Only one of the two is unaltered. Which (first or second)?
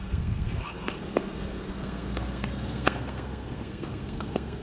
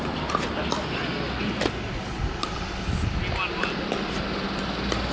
second